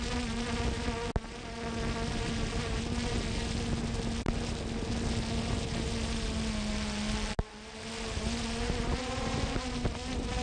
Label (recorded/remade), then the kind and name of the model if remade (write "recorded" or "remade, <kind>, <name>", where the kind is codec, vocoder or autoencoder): recorded